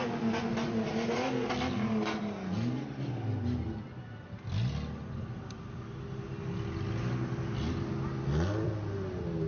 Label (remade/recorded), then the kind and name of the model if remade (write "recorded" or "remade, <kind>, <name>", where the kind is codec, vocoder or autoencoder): recorded